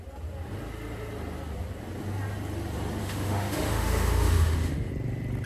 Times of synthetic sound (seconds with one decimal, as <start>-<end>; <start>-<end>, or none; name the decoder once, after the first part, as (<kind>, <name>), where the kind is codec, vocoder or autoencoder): 3.0-4.9 (autoencoder, DAC-VAE)